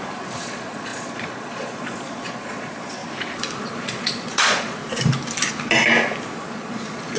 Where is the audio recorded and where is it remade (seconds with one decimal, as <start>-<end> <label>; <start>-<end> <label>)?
0.0-3.0 remade; 3.0-3.6 recorded; 3.6-4.8 remade; 4.8-6.4 recorded; 6.4-7.2 remade